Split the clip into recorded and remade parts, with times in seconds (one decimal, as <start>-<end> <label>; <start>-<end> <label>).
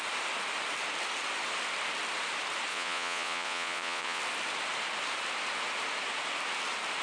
0.0-2.7 recorded; 2.7-4.2 remade; 4.2-7.0 recorded